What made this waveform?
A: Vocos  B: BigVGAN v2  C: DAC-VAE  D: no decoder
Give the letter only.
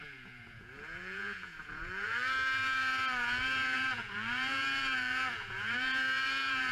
A